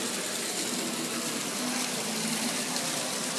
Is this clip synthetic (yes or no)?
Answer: no